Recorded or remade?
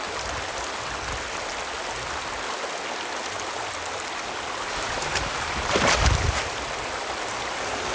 recorded